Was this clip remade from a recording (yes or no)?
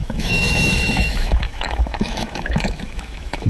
yes